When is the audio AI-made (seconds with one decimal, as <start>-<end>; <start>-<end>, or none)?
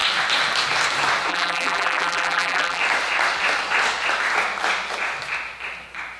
1.3-2.8